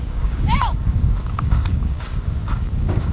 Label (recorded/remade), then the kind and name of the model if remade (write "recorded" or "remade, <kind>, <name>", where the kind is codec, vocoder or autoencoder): remade, codec, DAC